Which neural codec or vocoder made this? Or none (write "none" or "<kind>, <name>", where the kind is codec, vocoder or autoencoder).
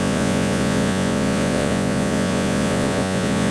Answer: vocoder, Vocos